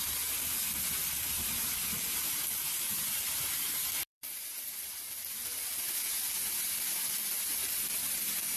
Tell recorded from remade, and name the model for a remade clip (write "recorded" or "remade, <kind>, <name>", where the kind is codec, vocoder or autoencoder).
recorded